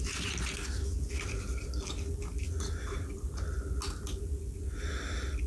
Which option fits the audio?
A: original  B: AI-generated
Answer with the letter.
A